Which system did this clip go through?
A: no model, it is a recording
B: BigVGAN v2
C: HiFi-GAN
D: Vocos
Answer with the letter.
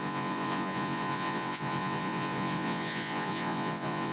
D